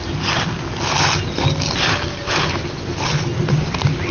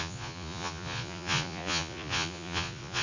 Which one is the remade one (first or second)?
second